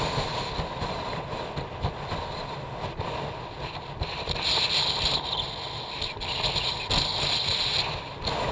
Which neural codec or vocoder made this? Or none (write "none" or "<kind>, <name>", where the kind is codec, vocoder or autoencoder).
none